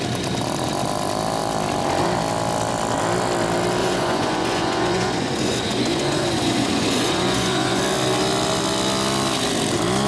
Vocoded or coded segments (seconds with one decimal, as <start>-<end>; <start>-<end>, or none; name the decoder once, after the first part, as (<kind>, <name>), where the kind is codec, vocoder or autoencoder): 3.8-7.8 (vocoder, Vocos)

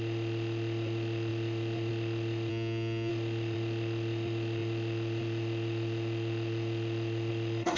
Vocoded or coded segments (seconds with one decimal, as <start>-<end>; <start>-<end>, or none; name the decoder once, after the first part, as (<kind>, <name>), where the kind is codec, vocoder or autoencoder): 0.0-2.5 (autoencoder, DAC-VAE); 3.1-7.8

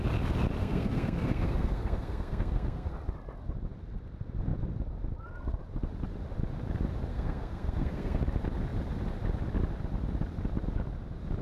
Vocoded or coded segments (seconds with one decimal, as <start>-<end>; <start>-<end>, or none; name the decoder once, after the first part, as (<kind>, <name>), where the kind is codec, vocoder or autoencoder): 0.6-2.9 (codec, SNAC); 7.1-8.2

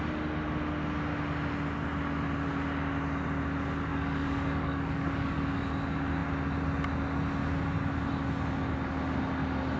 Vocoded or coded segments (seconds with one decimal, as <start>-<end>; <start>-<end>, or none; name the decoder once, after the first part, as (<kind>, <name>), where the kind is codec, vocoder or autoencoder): 3.9-5.7 (codec, DAC)

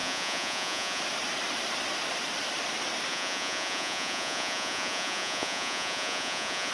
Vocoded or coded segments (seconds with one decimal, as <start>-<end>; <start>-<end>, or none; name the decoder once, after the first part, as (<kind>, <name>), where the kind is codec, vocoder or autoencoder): 0.0-1.0 (vocoder, Vocos); 3.1-6.7

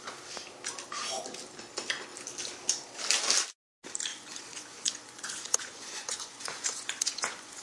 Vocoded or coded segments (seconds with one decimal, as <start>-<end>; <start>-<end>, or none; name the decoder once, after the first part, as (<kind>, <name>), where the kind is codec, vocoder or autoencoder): 4.1-7.6 (vocoder, Vocos)